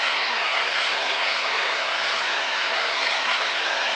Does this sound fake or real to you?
fake